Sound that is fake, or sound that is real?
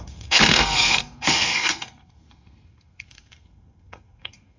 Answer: fake